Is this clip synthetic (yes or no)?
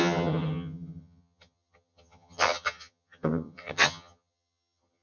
yes